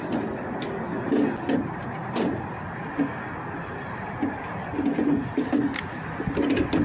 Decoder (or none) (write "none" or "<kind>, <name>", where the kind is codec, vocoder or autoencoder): none